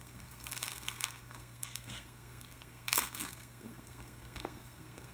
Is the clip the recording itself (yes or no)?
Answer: no